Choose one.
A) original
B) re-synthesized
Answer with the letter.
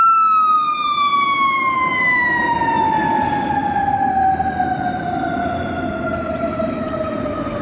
B